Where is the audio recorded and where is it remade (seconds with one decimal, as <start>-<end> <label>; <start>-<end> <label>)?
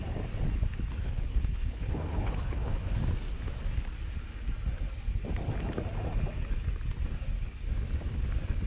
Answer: 0.0-1.0 recorded; 1.0-3.0 remade; 3.0-8.7 recorded